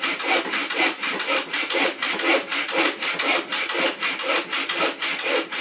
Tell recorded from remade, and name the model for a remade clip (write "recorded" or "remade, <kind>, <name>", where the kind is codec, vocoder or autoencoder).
recorded